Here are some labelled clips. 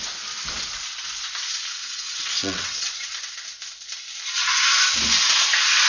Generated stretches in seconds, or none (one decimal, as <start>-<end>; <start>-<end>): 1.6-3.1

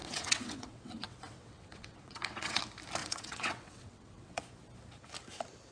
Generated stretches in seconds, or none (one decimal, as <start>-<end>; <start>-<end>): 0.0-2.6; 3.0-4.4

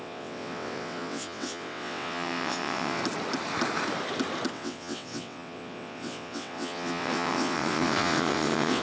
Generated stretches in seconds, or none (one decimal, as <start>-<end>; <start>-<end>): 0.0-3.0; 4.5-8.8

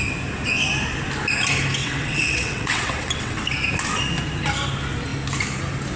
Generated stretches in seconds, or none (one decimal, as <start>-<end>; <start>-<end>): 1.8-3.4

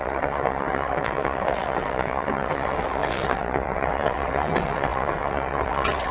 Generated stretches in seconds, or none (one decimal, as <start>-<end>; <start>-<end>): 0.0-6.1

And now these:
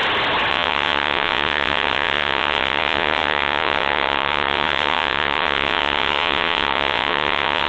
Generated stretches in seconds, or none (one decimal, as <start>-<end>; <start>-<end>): 0.5-7.7

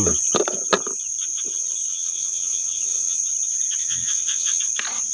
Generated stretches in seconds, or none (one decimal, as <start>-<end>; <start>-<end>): 1.9-3.2; 3.8-4.6

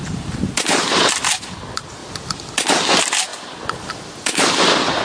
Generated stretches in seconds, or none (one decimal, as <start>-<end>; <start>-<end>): none